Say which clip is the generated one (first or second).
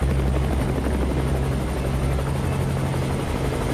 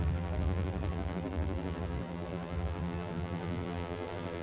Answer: second